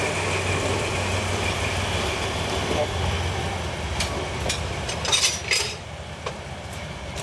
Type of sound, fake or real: fake